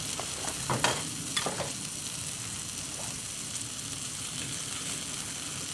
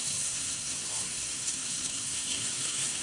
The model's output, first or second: second